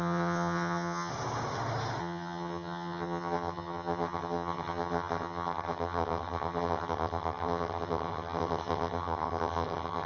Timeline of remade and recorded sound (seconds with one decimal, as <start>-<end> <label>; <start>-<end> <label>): 0.0-1.1 remade; 1.1-2.0 recorded; 2.0-10.1 remade

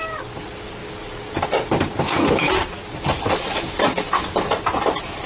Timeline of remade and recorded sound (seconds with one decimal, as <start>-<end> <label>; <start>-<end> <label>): 0.0-5.3 recorded

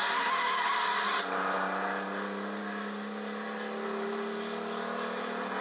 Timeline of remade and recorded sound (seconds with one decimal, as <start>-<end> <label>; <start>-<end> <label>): 0.0-5.6 recorded